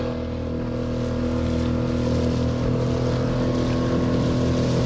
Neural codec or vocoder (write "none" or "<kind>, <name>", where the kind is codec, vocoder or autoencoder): none